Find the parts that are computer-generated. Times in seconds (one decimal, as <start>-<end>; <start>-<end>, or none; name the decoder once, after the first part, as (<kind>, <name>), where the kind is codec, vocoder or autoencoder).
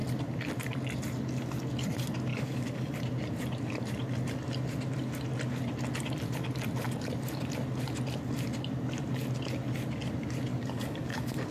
2.3-2.9 (codec, DAC); 10.5-11.5